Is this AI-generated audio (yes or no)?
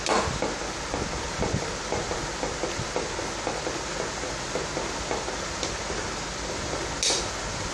no